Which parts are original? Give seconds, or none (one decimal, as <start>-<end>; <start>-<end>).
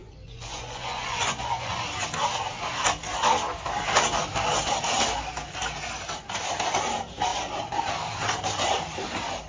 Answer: 1.8-9.5